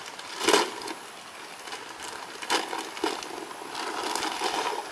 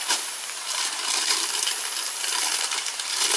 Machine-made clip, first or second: second